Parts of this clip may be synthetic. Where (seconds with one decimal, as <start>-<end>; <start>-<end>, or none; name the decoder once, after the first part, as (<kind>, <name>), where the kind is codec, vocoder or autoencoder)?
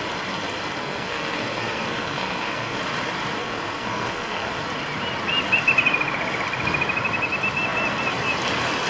0.8-2.8 (codec, SNAC); 3.4-4.5